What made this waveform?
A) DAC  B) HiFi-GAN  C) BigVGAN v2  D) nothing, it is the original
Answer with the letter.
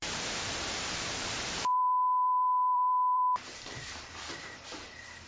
C